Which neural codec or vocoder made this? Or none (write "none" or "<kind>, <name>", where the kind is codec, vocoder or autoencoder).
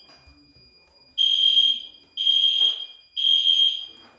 none